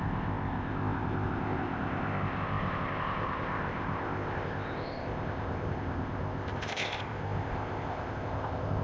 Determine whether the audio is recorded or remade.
remade